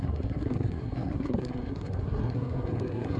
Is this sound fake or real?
fake